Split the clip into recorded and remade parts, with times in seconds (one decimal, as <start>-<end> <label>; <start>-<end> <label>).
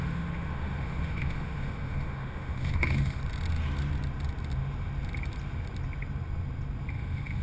0.0-3.2 remade; 3.2-6.9 recorded; 6.9-7.4 remade